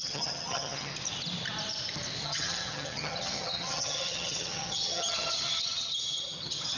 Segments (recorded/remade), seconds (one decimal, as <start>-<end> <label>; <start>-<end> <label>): 0.0-0.9 remade; 0.9-2.2 recorded; 2.2-6.8 remade